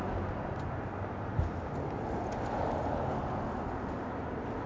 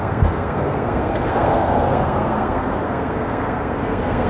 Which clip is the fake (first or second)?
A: second